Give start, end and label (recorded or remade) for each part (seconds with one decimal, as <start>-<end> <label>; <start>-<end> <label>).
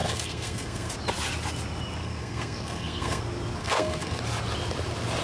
0.0-0.9 remade; 0.9-2.0 recorded; 2.0-3.2 remade; 3.2-3.6 recorded; 3.6-4.2 remade; 4.2-5.2 recorded